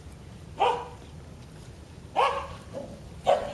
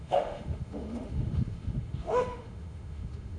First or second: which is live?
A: first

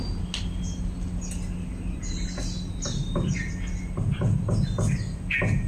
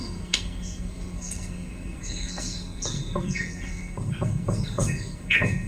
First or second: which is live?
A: first